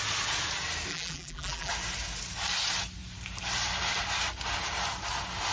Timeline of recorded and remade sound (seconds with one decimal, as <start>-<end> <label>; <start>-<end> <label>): 0.0-0.9 recorded; 0.9-1.7 remade; 1.7-5.5 recorded